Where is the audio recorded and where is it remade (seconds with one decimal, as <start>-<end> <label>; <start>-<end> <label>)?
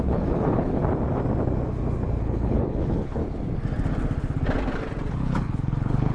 0.0-0.8 remade; 0.8-2.2 recorded; 2.2-3.2 remade; 3.2-5.1 recorded; 5.1-6.1 remade